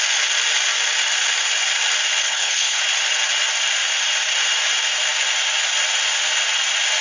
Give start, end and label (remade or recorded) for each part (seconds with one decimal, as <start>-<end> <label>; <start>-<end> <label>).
0.0-2.2 recorded; 2.2-2.8 remade; 2.8-7.0 recorded

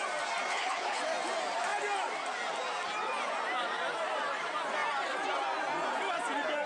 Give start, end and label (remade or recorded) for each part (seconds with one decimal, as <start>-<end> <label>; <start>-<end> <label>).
0.0-0.5 recorded; 0.5-1.0 remade; 1.0-6.7 recorded

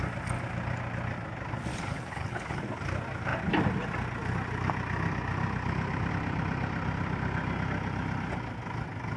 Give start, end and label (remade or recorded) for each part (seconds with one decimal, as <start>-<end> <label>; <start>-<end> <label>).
0.0-1.7 recorded; 1.7-2.6 remade; 2.6-9.2 recorded

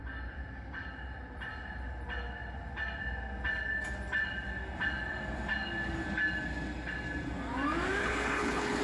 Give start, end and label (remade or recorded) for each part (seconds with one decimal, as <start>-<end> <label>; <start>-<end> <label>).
0.0-8.0 recorded; 8.0-8.8 remade